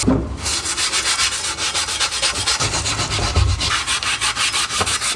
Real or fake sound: real